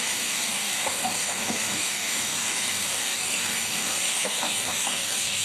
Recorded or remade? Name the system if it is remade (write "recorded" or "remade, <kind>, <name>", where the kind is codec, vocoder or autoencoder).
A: remade, codec, DAC